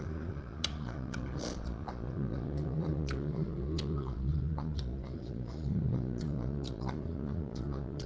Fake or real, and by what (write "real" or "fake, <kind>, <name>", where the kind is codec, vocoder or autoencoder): fake, vocoder, Vocos